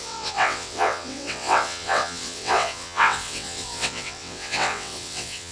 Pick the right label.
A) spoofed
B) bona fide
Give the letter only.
A